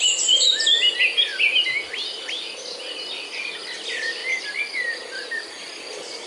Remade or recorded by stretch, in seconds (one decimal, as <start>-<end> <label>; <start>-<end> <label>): 0.0-6.3 recorded